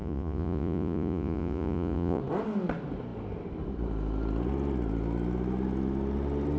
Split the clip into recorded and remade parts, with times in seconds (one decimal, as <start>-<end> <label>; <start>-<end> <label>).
0.0-2.2 remade; 2.2-6.6 recorded